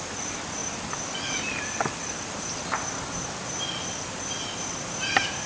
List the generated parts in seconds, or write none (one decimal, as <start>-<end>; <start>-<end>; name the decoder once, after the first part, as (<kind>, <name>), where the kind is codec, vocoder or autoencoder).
0.6-3.9 (vocoder, BigVGAN v2)